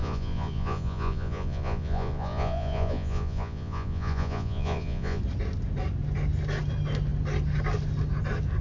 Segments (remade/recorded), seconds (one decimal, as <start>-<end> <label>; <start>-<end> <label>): 0.0-5.2 remade; 5.2-8.6 recorded